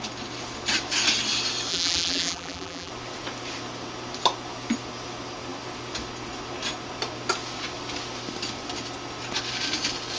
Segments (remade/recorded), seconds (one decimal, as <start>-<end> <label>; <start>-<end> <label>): 0.0-1.7 recorded; 1.7-2.9 remade; 2.9-10.2 recorded